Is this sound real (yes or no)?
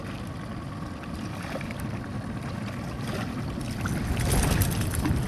yes